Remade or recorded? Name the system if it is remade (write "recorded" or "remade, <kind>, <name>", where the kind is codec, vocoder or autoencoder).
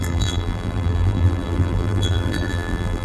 remade, vocoder, BigVGAN v2